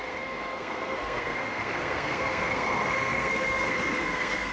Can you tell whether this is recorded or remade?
remade